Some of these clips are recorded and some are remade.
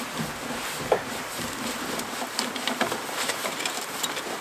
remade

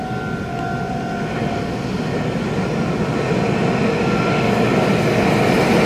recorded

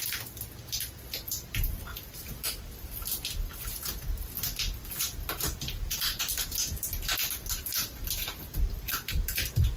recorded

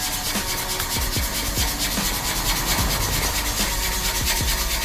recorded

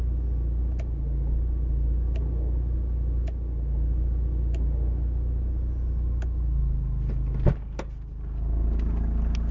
recorded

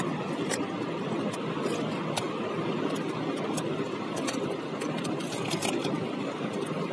remade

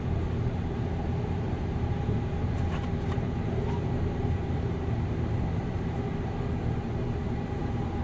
remade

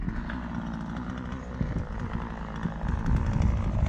recorded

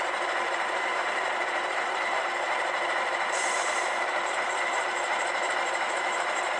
remade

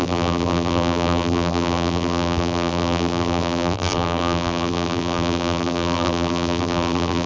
remade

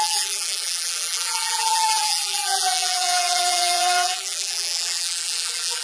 remade